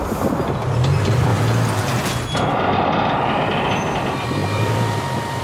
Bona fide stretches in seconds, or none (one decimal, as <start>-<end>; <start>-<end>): 1.3-2.1